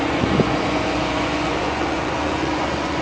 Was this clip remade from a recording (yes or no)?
yes